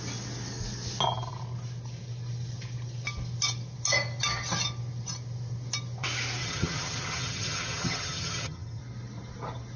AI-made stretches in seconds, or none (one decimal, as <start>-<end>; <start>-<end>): 6.4-8.8